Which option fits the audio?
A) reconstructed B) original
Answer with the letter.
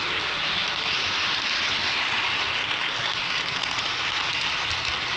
B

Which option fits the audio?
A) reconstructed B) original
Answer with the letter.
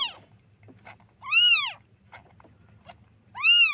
B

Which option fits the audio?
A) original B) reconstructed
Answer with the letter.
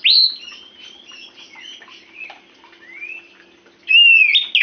A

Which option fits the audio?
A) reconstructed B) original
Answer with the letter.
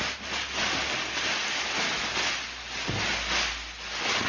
B